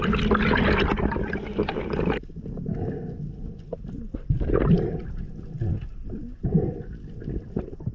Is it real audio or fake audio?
real